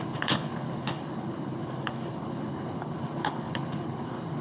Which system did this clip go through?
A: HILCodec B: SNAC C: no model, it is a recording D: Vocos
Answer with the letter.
A